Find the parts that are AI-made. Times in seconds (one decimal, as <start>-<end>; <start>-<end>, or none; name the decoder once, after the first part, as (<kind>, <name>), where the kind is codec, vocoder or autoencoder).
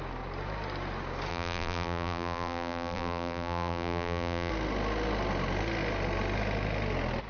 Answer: 1.3-4.5 (vocoder, BigVGAN v2)